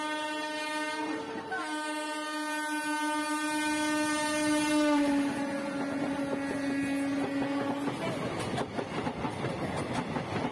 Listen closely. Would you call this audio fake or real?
real